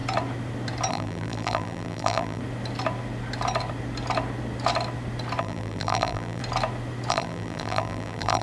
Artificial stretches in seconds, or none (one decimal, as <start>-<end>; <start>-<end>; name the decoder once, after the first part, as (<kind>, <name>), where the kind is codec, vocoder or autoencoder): 0.9-2.4 (vocoder, BigVGAN v2); 5.4-6.4; 7.1-8.4